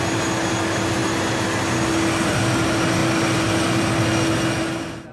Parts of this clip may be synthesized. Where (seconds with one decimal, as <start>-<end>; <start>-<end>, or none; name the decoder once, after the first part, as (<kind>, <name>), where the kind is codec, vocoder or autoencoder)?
none